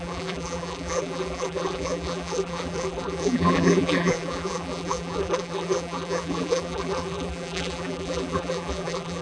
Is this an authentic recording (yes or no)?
no